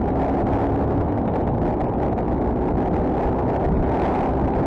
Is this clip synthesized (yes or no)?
no